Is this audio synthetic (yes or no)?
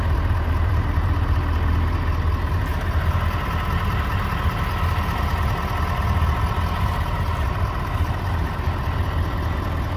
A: no